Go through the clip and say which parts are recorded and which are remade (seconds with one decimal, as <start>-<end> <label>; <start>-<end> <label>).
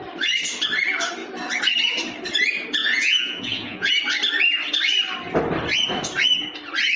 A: 0.0-2.8 recorded; 2.8-3.9 remade; 3.9-7.0 recorded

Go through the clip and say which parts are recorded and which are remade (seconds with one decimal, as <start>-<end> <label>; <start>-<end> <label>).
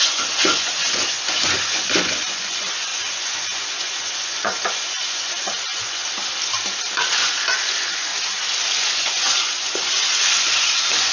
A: 0.0-6.0 remade; 6.0-7.5 recorded; 7.5-8.1 remade; 8.1-8.8 recorded; 8.8-11.1 remade